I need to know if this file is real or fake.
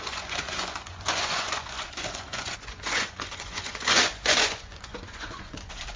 fake